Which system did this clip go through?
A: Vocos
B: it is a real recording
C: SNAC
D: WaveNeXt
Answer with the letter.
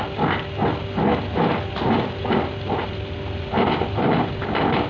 B